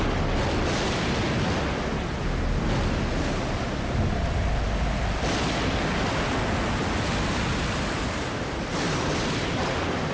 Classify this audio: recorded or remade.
recorded